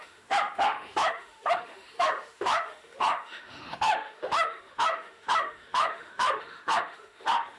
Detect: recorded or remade remade